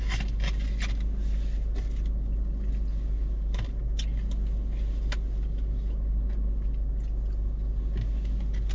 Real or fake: real